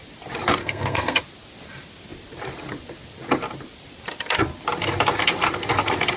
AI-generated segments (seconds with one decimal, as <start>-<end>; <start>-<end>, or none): 0.6-1.2